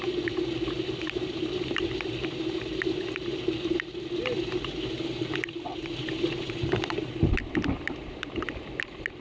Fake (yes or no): no